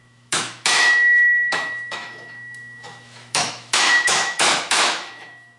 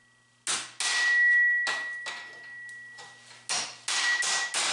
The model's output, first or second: first